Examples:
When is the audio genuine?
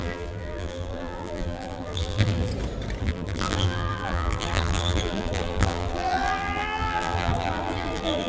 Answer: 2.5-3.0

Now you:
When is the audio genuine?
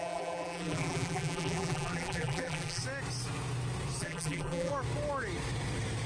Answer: 2.8-4.0; 4.7-6.1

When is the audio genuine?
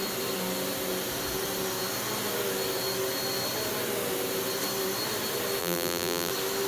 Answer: 0.0-5.6; 6.3-6.7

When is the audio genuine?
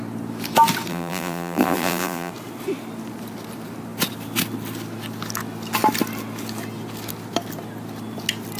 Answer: 0.0-0.9; 2.3-8.6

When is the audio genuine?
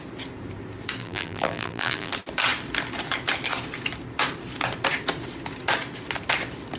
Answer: 0.0-1.0; 2.1-6.8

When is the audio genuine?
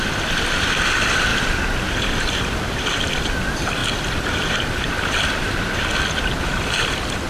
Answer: 1.3-1.8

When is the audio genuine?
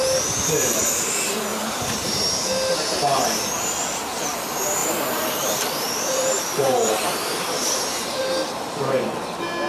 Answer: 0.0-1.5; 2.2-4.8; 8.9-9.7